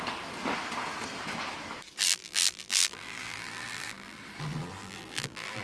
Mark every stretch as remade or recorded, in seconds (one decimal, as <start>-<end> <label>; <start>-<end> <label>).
0.0-2.0 recorded; 2.0-4.2 remade; 4.2-4.8 recorded; 4.8-5.6 remade